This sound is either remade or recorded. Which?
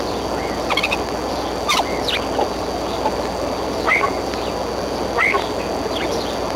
recorded